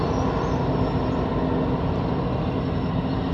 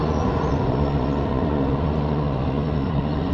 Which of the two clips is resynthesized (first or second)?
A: second